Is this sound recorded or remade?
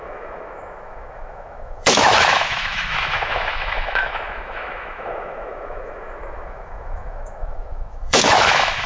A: remade